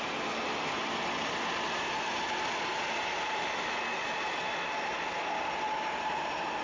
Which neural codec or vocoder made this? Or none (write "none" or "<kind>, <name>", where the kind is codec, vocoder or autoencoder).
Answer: none